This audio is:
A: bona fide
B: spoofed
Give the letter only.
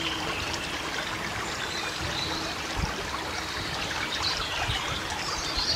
A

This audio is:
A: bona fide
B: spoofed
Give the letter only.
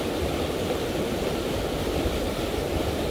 A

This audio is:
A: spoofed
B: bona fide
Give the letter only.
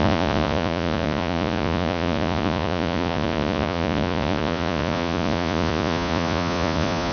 A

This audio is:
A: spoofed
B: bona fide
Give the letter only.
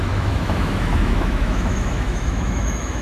A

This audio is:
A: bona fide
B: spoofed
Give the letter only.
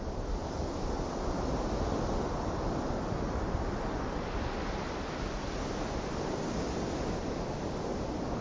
A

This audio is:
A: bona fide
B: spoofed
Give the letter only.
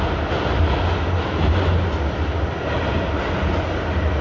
A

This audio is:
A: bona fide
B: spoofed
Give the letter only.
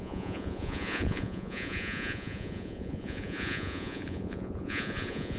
B